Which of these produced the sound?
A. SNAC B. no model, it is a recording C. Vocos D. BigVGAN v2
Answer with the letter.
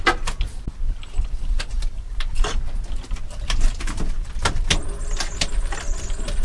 B